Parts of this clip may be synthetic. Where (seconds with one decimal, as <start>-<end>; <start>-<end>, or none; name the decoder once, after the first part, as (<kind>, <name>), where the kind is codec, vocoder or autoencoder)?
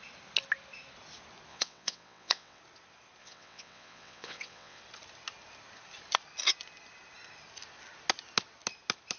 1.5-2.6 (vocoder, WaveNeXt); 3.2-4.8